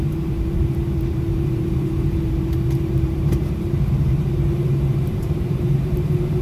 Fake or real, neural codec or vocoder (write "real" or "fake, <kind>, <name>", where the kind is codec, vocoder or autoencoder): fake, vocoder, BigVGAN v2